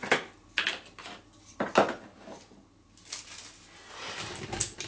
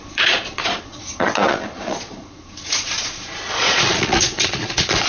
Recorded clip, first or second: first